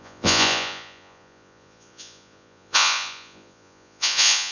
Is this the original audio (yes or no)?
no